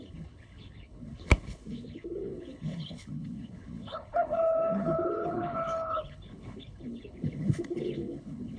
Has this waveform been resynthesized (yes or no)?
yes